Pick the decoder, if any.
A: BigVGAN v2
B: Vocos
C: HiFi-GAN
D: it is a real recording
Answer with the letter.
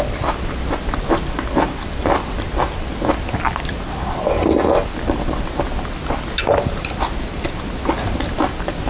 D